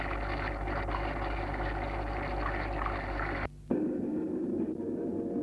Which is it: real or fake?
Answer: real